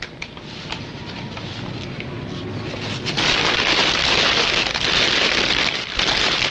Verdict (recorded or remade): recorded